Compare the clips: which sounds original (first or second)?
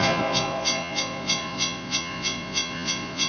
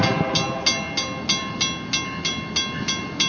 second